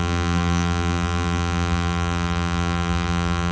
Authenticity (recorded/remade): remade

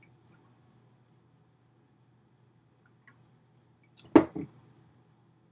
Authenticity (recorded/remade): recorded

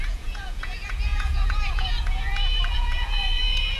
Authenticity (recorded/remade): remade